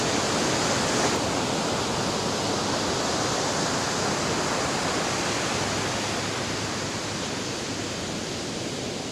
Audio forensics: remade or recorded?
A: recorded